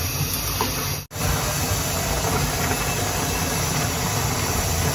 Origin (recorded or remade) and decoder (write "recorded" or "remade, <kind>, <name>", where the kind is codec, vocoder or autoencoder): recorded